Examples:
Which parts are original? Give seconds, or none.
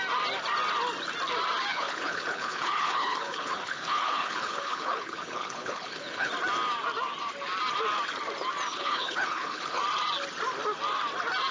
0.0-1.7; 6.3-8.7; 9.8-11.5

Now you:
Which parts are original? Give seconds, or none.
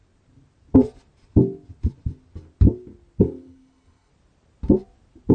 0.0-3.2; 4.1-5.3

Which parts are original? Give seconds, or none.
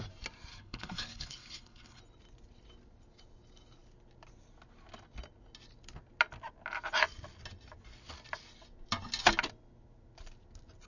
0.0-0.5; 2.0-10.9